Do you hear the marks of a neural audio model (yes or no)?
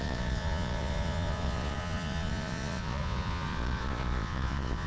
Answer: yes